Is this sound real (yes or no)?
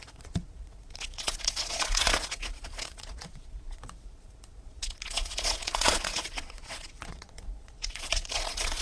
no